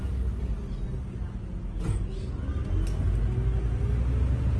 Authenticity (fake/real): real